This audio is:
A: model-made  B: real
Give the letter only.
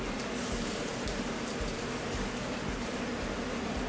A